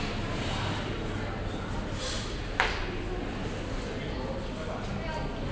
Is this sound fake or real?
real